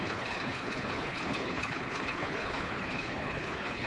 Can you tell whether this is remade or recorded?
remade